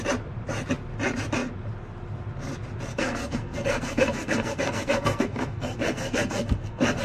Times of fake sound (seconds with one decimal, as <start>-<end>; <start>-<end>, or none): 2.9-7.0